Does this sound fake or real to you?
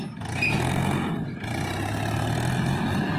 real